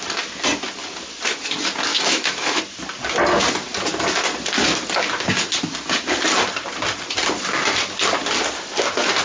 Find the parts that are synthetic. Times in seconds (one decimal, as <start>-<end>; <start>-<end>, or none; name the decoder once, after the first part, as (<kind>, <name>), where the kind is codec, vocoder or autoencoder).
1.9-2.6 (autoencoder, DAC-VAE)